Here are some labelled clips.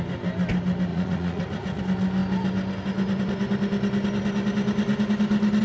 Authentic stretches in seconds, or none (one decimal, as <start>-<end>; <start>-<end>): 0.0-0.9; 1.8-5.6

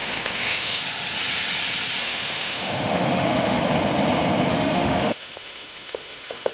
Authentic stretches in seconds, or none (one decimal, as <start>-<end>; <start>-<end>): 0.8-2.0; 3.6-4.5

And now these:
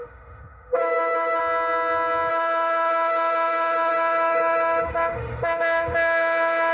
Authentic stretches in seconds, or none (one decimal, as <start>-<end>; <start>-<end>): 1.4-2.3